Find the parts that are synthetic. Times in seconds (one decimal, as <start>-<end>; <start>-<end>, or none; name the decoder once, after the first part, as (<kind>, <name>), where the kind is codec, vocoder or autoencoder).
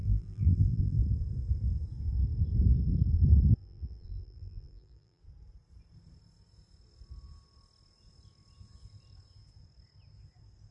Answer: 0.0-1.0 (vocoder, BigVGAN v2); 3.6-5.2